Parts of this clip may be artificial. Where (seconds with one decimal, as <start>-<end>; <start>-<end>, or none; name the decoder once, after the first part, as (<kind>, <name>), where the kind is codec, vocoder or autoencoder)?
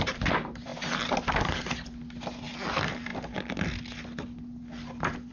0.0-0.7 (vocoder, BigVGAN v2); 2.7-3.1